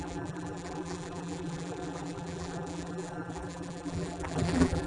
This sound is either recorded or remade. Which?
remade